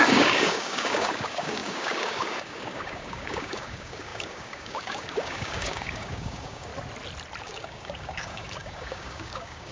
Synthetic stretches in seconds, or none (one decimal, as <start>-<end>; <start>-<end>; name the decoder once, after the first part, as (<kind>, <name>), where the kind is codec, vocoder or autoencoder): 0.0-6.7 (codec, DAC); 7.4-9.7